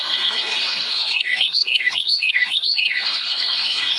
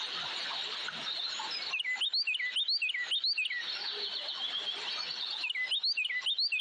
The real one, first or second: second